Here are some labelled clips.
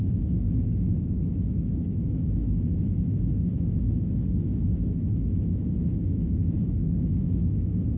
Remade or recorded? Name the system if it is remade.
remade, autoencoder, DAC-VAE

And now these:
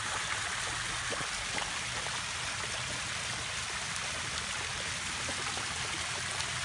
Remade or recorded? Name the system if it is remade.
recorded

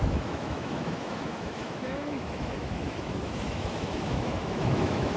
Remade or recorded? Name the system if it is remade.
remade, autoencoder, DAC-VAE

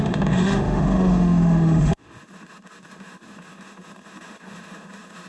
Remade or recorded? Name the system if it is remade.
remade, autoencoder, DAC-VAE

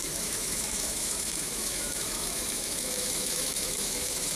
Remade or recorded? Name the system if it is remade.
remade, autoencoder, DAC-VAE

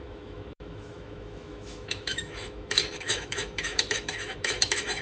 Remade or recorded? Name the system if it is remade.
remade, autoencoder, DAC-VAE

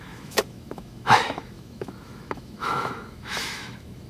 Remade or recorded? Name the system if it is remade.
remade, autoencoder, DAC-VAE